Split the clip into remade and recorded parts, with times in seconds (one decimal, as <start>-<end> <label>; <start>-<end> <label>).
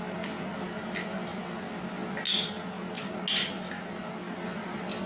0.0-5.1 recorded